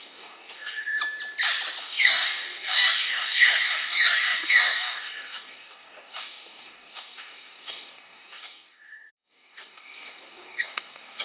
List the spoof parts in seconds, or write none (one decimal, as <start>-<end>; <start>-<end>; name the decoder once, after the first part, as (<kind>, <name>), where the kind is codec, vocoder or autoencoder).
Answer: 0.0-1.0 (codec, DAC); 1.8-11.2